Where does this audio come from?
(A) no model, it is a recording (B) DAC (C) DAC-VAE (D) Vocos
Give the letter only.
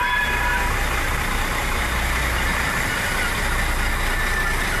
A